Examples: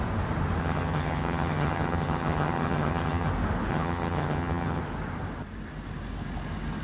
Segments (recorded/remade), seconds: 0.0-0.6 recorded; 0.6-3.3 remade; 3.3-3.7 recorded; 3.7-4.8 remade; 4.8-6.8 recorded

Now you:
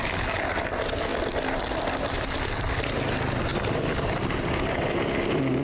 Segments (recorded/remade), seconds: 0.0-5.6 recorded

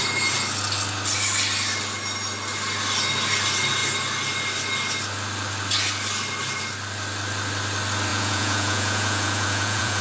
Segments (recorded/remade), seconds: 0.0-8.1 recorded; 8.1-10.0 remade

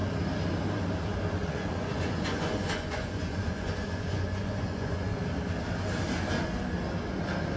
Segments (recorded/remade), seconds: 0.0-1.4 recorded; 1.4-5.2 remade; 5.2-7.6 recorded

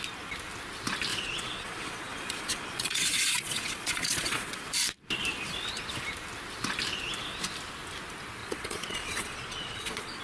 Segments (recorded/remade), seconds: 0.0-1.1 recorded; 1.1-4.6 remade; 4.6-8.4 recorded; 8.4-10.2 remade

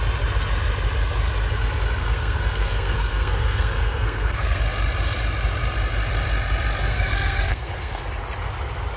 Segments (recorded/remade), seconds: 0.0-2.0 recorded; 2.0-4.6 remade; 4.6-6.9 recorded; 6.9-8.0 remade; 8.0-9.0 recorded

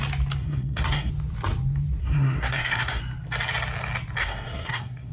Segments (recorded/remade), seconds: 0.0-0.4 recorded; 0.4-1.1 remade; 1.1-2.0 recorded; 2.0-3.0 remade; 3.0-4.2 recorded; 4.2-5.1 remade